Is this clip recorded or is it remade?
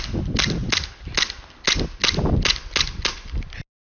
recorded